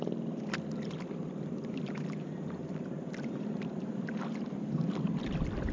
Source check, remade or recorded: remade